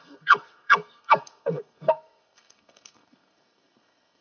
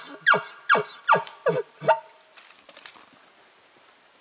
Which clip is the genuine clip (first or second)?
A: second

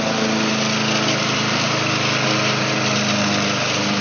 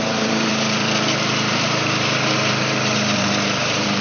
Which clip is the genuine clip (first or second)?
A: first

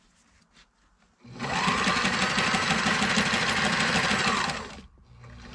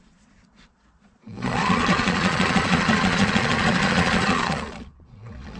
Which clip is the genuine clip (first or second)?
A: first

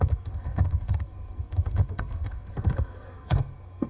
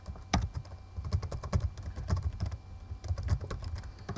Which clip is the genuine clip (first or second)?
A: second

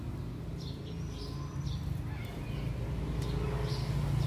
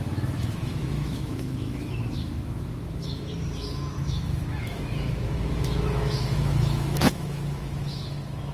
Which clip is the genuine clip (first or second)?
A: first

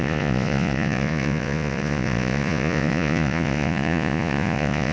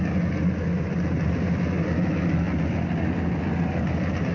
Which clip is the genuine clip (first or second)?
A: second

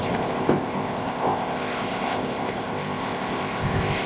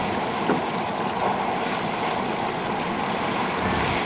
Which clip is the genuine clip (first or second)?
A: second